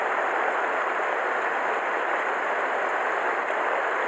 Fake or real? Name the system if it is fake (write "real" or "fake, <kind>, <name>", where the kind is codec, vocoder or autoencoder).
real